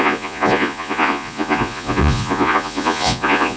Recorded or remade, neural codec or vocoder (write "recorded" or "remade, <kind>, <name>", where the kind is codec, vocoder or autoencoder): remade, vocoder, Vocos